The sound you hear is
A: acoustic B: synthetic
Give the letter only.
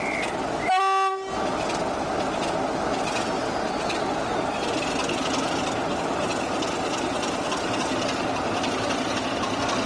A